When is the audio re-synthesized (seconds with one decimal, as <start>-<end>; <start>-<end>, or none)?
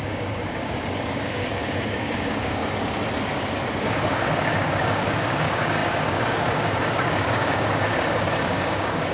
0.0-2.6; 3.8-9.1